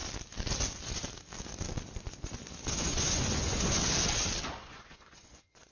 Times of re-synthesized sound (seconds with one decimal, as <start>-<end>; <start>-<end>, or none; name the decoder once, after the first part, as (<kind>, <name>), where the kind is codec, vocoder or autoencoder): 2.7-3.8 (vocoder, Vocos); 4.5-5.7